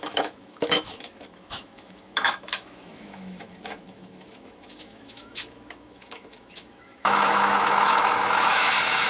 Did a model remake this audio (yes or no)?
yes